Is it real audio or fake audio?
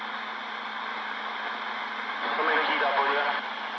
real